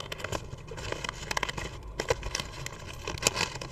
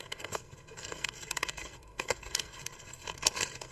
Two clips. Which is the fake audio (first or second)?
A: second